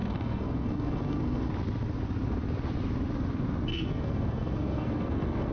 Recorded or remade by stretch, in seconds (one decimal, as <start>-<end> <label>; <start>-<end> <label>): 0.0-1.5 remade; 1.5-3.7 recorded; 3.7-5.5 remade